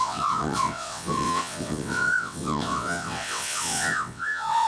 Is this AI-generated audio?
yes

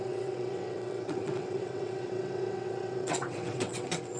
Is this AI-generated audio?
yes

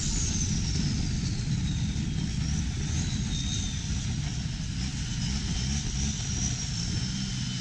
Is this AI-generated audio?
no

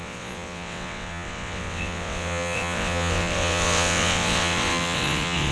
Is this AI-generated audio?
yes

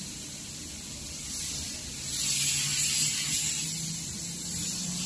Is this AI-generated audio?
no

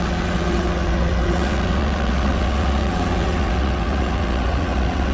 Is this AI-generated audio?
yes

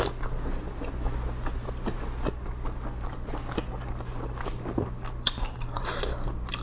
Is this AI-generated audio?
no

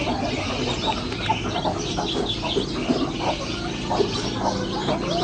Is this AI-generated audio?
no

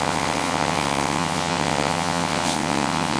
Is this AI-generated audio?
yes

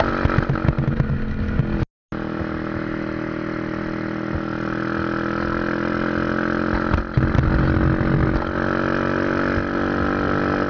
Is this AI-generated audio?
no